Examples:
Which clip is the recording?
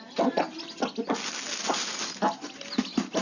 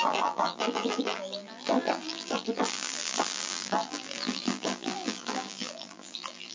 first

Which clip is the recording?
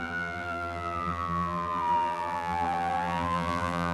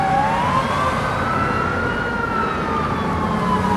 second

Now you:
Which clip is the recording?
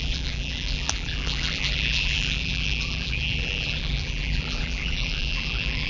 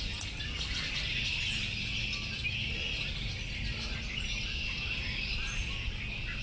second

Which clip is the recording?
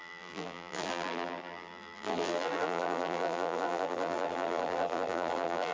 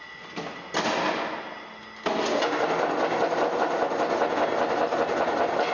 second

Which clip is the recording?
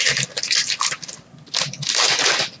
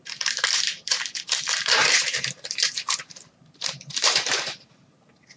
first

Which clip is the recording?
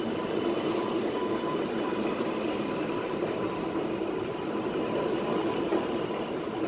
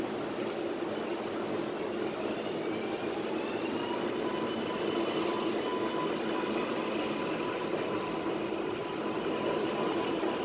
second